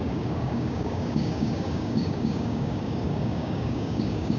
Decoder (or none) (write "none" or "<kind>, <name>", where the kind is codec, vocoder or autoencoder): codec, DAC